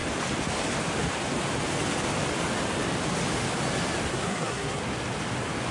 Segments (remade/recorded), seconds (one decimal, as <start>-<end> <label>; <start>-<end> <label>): 0.0-4.1 recorded; 4.1-4.8 remade; 4.8-5.7 recorded